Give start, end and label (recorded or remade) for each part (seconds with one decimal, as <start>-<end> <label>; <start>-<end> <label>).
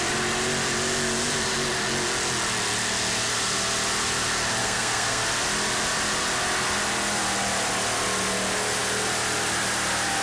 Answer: 0.0-4.6 recorded; 4.6-5.2 remade; 5.2-10.2 recorded